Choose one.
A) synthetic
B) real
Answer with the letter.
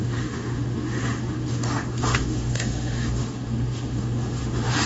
A